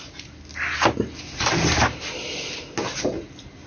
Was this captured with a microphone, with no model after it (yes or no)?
yes